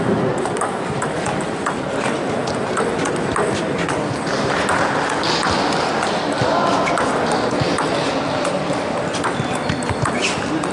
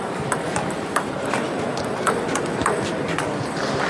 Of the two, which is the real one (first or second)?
first